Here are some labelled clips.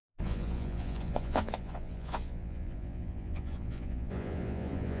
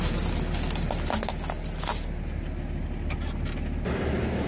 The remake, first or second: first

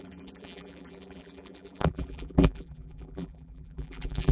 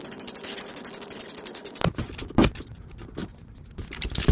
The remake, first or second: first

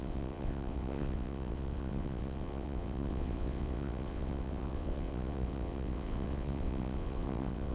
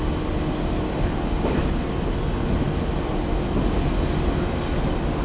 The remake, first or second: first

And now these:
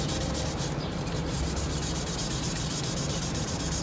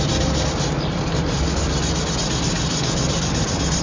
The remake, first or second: first